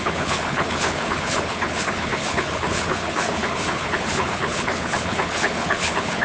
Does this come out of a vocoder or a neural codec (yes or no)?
yes